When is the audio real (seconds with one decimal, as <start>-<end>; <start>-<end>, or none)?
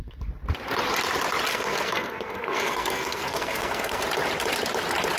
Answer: 0.0-1.5; 4.0-5.2